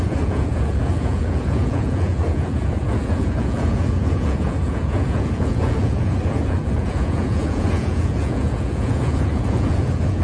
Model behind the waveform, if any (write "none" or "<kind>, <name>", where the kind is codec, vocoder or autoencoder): vocoder, Vocos